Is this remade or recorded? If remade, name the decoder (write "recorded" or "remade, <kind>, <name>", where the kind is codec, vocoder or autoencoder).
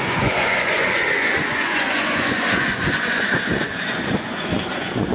remade, vocoder, Vocos